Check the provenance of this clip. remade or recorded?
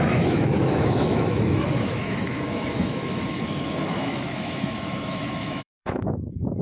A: remade